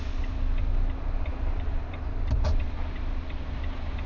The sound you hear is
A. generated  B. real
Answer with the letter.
B